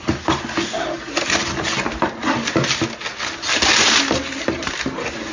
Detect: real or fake real